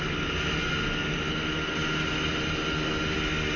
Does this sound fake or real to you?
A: real